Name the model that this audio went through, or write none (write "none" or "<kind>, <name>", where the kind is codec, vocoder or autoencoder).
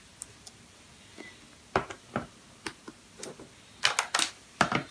none